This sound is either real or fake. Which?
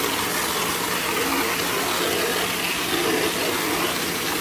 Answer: real